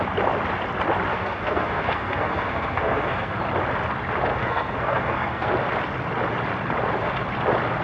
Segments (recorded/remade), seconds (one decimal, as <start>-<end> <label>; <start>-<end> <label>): 0.0-1.1 recorded; 1.1-3.4 remade; 3.4-4.3 recorded; 4.3-5.5 remade; 5.5-7.8 recorded